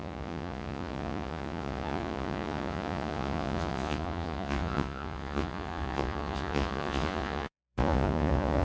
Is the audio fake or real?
fake